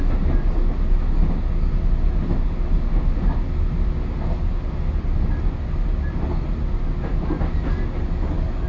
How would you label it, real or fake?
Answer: real